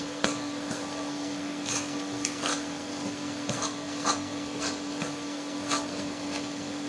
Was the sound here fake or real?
fake